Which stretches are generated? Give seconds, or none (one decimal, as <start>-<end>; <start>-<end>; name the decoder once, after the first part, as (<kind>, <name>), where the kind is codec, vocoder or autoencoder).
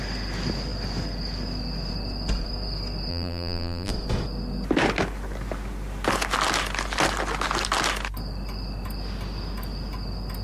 3.1-3.9 (vocoder, BigVGAN v2)